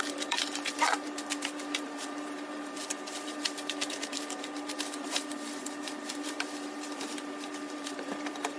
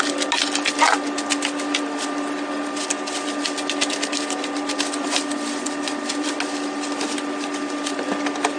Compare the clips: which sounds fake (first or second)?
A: first